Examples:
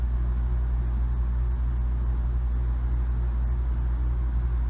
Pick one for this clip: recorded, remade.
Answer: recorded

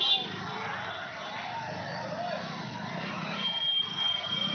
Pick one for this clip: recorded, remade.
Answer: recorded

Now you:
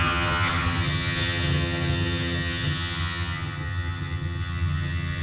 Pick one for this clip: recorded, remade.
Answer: remade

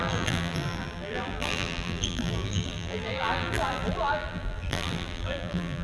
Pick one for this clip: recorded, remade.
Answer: remade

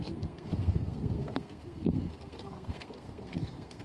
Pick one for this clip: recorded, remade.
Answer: remade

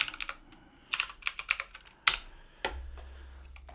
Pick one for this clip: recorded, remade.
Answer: recorded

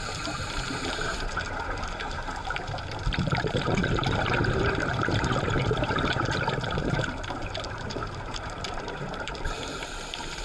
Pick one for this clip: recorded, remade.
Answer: remade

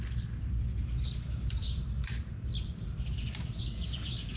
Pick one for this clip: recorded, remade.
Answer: recorded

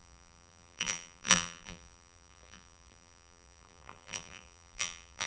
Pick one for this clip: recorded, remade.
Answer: remade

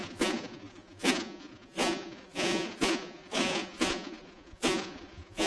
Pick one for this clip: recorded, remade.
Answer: remade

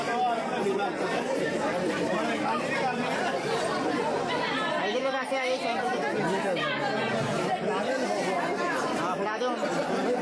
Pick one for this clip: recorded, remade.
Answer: recorded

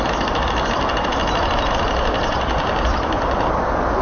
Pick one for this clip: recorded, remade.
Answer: remade